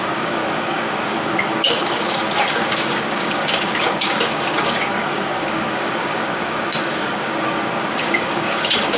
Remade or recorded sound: remade